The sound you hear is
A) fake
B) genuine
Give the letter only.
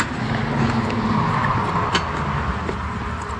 B